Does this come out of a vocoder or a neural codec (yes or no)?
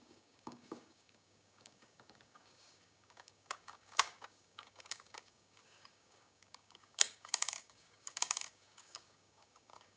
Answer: yes